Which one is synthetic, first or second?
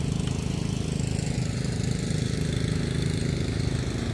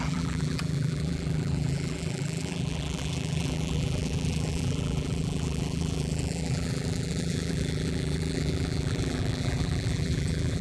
second